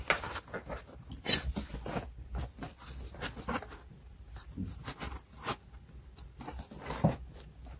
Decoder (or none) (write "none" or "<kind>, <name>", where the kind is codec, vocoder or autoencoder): none